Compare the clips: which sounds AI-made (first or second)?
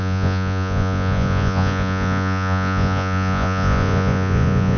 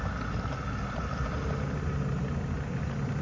first